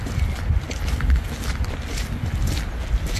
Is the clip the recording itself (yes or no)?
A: yes